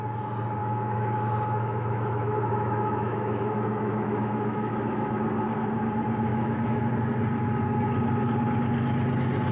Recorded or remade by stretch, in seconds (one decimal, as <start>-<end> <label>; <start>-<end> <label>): 0.0-0.6 recorded; 0.6-5.1 remade; 5.1-6.3 recorded; 6.3-6.9 remade; 6.9-9.5 recorded